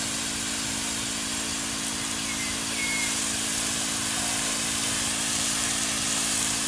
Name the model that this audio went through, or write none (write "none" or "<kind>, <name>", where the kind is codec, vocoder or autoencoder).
none